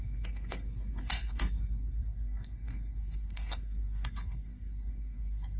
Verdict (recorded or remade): remade